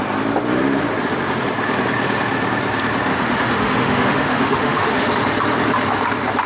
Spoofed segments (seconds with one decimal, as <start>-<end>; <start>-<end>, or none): 3.1-5.1